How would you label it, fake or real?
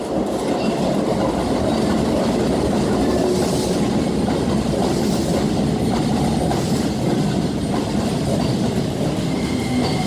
real